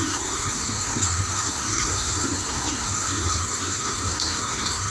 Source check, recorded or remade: remade